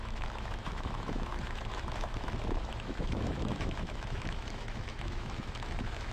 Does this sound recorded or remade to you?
remade